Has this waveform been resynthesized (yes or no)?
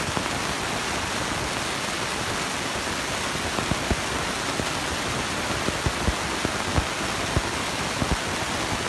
no